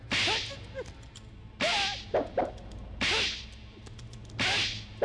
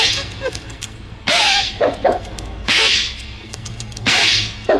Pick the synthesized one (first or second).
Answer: second